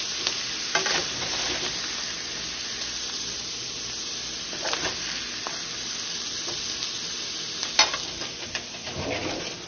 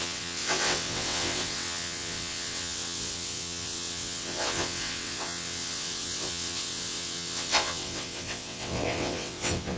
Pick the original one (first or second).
first